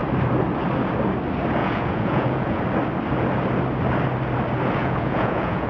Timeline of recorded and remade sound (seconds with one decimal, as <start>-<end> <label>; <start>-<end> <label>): 0.0-1.6 recorded; 1.6-2.6 remade; 2.6-4.8 recorded; 4.8-5.7 remade